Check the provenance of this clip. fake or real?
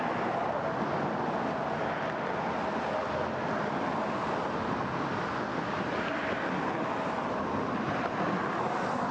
real